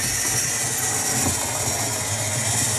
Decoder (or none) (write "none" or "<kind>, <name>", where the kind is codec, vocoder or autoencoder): none